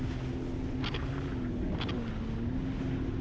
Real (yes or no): yes